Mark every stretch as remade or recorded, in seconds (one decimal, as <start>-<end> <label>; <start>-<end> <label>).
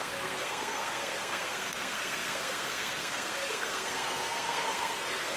0.0-5.4 remade